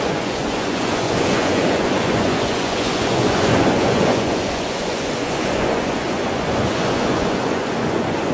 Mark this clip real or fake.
fake